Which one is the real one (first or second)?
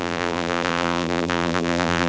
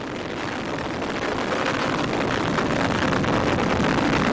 second